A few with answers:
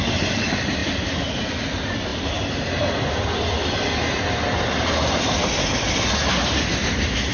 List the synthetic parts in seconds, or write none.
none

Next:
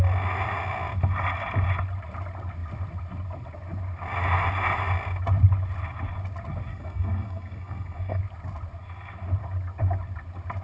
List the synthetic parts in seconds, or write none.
6.7-8.2

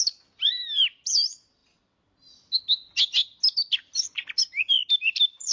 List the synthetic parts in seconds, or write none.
none

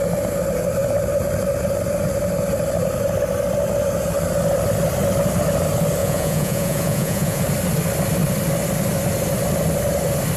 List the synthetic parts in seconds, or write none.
6.0-7.4